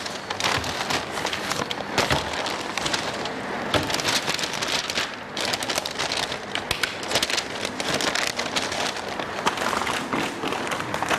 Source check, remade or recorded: recorded